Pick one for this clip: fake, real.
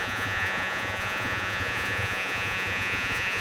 fake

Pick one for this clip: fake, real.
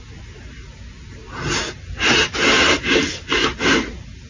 real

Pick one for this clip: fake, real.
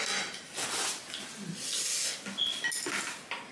real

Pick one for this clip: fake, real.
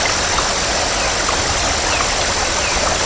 real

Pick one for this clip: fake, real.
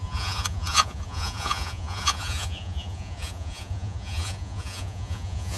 fake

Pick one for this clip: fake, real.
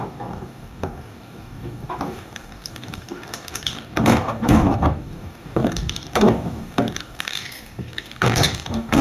fake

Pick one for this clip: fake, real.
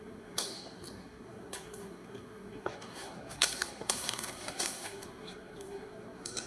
fake